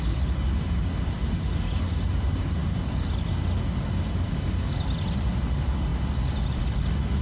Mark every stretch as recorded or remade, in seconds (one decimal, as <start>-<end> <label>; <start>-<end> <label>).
0.0-7.2 recorded